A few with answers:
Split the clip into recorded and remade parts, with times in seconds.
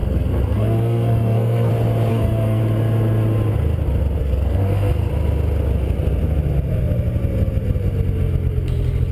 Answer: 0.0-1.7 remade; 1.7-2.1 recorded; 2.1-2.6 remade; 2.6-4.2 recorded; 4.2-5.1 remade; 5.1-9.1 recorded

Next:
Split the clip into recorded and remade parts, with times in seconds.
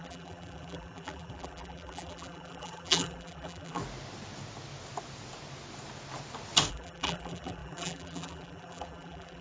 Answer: 0.0-3.8 remade; 3.8-6.7 recorded; 6.7-9.4 remade